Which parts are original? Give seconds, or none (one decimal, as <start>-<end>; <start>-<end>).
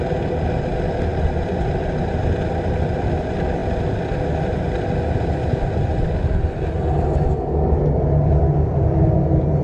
0.0-9.6